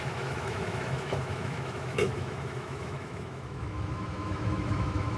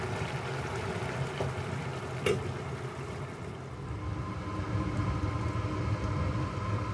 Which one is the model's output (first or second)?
first